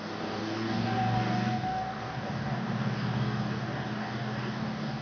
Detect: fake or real fake